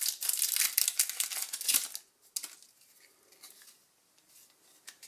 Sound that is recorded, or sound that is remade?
recorded